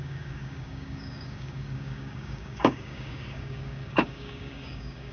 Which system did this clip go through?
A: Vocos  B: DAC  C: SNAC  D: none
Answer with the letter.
B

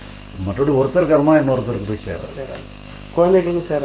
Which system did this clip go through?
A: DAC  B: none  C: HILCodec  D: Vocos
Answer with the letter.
A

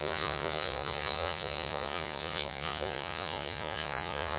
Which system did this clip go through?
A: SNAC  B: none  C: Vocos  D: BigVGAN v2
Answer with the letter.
C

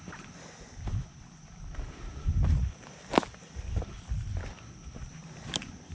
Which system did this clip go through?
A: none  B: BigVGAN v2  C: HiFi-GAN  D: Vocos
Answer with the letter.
A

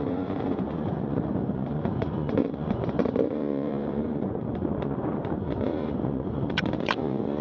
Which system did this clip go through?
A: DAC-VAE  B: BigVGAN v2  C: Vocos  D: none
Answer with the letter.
C